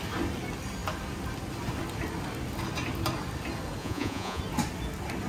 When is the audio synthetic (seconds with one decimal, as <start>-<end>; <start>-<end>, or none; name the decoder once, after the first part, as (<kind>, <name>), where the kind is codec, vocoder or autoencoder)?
3.8-4.4 (vocoder, Vocos)